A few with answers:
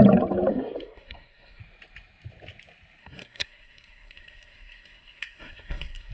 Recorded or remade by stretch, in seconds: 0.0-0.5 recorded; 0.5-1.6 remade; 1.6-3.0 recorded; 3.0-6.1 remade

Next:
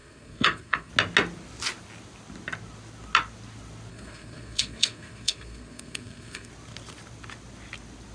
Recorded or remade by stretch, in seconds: 0.0-0.9 remade; 0.9-3.9 recorded; 3.9-6.5 remade; 6.5-8.1 recorded

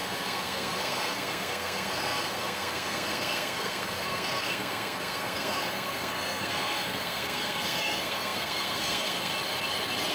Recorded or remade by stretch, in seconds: 0.0-9.3 remade; 9.3-10.1 recorded

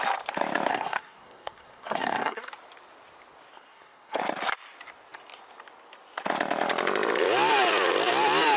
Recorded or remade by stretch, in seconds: 0.0-0.7 recorded; 0.7-2.5 remade; 2.5-3.5 recorded; 3.5-4.2 remade; 4.2-8.6 recorded

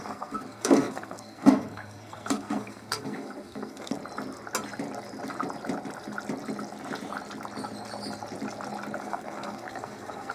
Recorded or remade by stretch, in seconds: 0.0-4.0 remade; 4.0-9.0 recorded; 9.0-10.3 remade

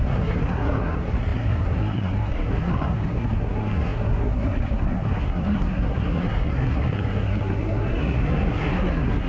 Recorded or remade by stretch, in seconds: 0.0-9.3 remade